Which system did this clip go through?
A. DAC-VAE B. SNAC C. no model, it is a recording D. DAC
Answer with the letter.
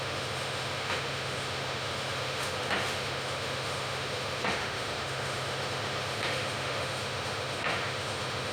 A